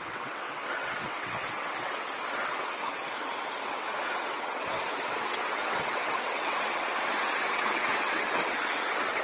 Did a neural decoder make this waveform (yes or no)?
yes